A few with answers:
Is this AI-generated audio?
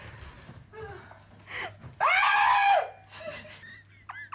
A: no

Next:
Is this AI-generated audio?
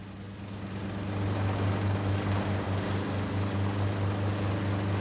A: no